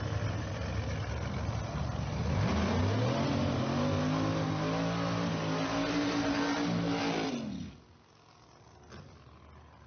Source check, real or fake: real